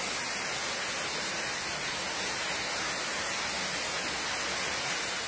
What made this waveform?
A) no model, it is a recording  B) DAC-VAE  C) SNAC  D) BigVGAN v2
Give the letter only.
A